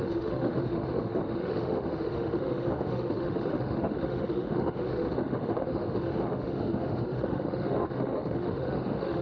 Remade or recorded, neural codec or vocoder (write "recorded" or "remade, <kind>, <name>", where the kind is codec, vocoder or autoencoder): remade, autoencoder, DAC-VAE